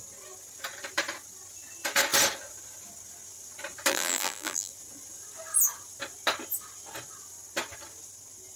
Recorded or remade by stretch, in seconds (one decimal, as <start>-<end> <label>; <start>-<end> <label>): 0.0-3.9 recorded; 3.9-4.7 remade; 4.7-8.6 recorded